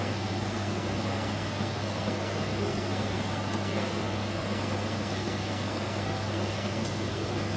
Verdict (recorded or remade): remade